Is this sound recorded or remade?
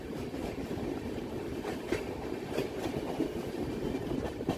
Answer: remade